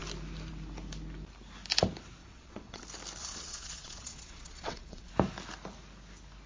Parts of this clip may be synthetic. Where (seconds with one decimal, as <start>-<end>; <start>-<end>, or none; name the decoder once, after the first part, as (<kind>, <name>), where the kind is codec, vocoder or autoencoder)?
2.2-2.8 (vocoder, WaveNeXt); 3.2-5.1